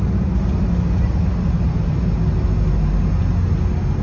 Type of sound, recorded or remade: recorded